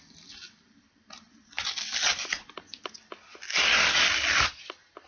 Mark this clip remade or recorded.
remade